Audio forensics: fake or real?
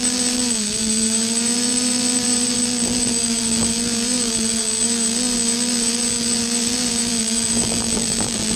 fake